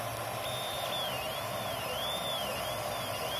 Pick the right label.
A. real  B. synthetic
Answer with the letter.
A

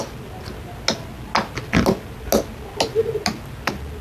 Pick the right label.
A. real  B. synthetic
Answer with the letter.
A